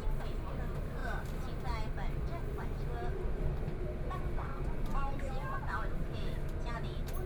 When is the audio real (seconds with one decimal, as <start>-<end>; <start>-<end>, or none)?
0.0-4.9; 5.5-7.3